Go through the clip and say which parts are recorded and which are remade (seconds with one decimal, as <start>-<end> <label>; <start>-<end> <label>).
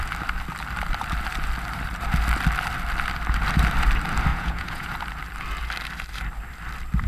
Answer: 0.0-4.3 recorded; 4.3-4.9 remade; 4.9-7.1 recorded